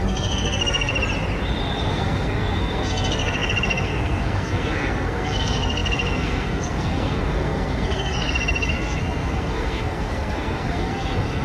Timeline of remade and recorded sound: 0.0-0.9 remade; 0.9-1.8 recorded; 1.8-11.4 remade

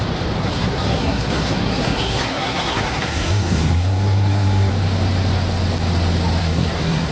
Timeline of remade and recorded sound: 0.0-0.4 recorded; 0.4-4.7 remade; 4.7-6.4 recorded; 6.4-7.1 remade

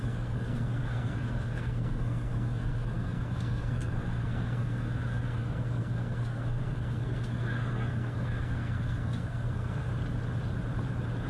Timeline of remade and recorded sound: 0.0-9.9 remade; 9.9-11.3 recorded

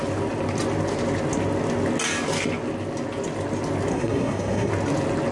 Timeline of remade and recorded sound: 0.0-3.9 recorded; 3.9-4.7 remade; 4.7-5.3 recorded

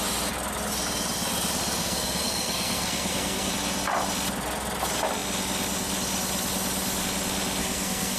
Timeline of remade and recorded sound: 0.0-1.8 recorded; 1.8-3.5 remade; 3.5-7.6 recorded; 7.6-8.2 remade

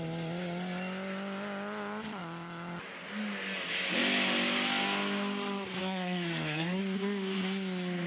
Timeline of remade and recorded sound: 0.0-5.8 recorded; 5.8-6.8 remade; 6.8-8.1 recorded

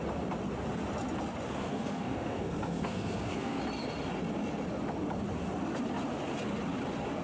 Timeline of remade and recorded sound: 0.0-1.6 recorded; 1.6-3.6 remade; 3.6-7.2 recorded

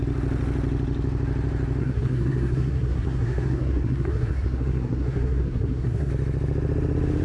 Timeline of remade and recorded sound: 0.0-1.8 recorded; 1.8-6.1 remade; 6.1-7.2 recorded